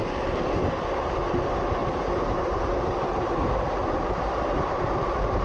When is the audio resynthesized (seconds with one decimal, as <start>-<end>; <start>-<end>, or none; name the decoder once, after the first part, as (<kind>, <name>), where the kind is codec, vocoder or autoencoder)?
1.8-5.0 (vocoder, BigVGAN v2)